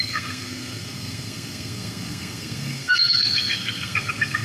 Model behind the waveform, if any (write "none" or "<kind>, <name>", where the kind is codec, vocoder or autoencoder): codec, SNAC